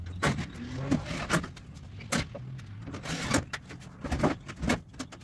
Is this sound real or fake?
real